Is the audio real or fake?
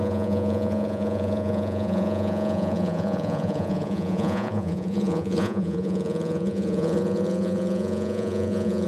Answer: fake